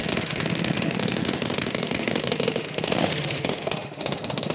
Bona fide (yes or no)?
no